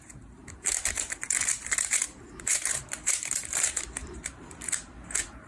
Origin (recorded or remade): remade